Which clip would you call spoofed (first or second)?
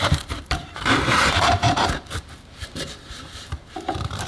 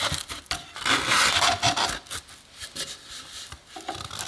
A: first